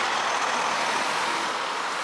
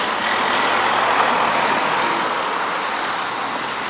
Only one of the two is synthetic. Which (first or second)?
first